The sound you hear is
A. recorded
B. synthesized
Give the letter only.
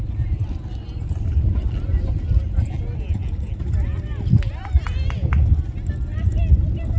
A